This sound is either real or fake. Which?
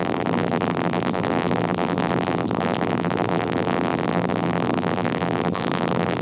fake